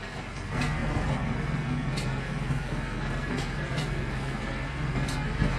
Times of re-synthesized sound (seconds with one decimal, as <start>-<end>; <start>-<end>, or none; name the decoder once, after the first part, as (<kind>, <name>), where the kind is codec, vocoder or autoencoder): 0.0-5.6 (codec, SNAC)